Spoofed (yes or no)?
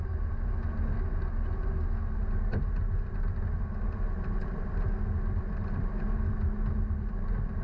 no